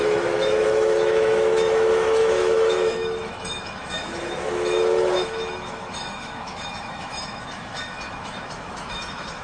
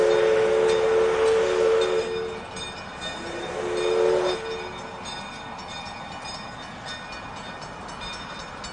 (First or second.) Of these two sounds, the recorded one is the second